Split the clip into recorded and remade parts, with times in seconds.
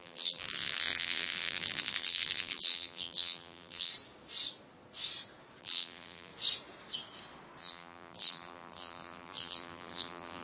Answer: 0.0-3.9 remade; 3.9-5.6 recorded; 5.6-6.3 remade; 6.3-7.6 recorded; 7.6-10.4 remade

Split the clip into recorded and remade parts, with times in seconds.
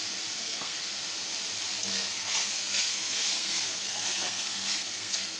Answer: 0.0-0.4 recorded; 0.4-1.0 remade; 1.0-1.9 recorded; 1.9-5.4 remade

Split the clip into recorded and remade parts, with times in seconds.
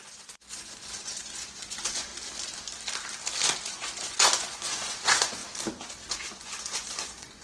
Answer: 0.0-2.1 remade; 2.1-3.7 recorded; 3.7-5.4 remade; 5.4-6.1 recorded; 6.1-7.4 remade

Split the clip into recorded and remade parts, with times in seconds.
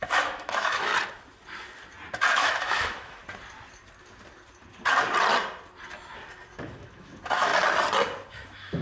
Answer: 0.0-0.9 remade; 0.9-2.3 recorded; 2.3-3.2 remade; 3.2-6.6 recorded; 6.6-7.5 remade; 7.5-8.3 recorded; 8.3-8.8 remade